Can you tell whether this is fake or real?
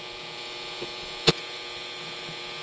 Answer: fake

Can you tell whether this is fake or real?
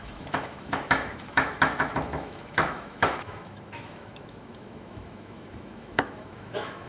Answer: fake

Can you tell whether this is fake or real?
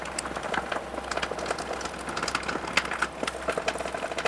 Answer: real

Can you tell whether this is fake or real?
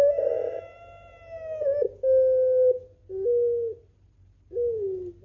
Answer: real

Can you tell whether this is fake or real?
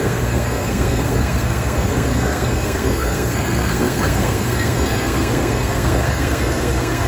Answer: fake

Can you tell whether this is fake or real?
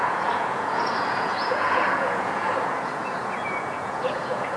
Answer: fake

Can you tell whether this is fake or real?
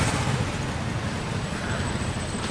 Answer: real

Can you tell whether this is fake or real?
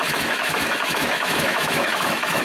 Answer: fake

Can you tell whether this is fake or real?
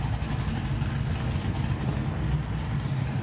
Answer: real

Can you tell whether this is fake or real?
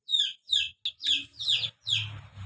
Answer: real